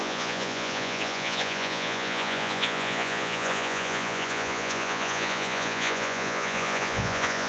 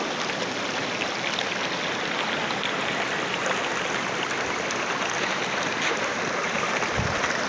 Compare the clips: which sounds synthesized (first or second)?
first